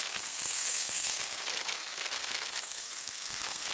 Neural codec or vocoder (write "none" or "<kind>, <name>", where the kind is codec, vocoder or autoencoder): codec, SNAC